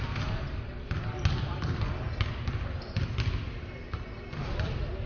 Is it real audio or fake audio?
real